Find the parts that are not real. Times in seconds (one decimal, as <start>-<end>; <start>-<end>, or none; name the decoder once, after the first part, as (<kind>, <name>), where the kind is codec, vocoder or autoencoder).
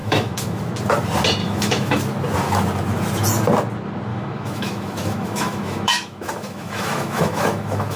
0.0-0.6 (autoencoder, DAC-VAE); 1.4-2.0; 4.1-8.0